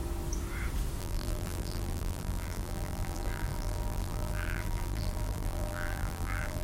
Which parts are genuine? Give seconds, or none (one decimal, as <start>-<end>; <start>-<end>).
0.0-1.0